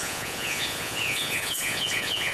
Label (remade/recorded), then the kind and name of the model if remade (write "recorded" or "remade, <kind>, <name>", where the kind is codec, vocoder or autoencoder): remade, vocoder, Vocos